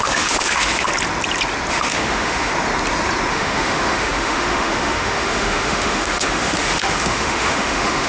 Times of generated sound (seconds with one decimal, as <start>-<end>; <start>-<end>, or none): 0.0-0.9; 1.7-2.5; 3.3-8.1